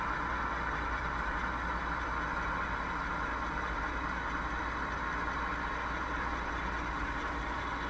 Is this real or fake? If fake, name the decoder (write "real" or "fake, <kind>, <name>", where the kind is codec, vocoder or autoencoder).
real